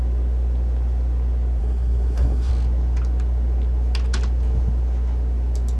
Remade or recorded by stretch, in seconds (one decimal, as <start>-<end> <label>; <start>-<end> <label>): 0.0-1.6 recorded; 1.6-2.5 remade; 2.5-5.8 recorded